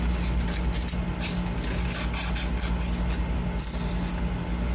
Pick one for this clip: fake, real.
real